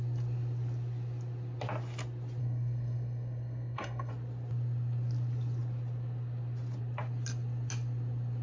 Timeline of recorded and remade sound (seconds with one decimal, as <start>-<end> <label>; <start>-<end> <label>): 0.0-2.4 recorded; 2.4-4.1 remade; 4.1-8.4 recorded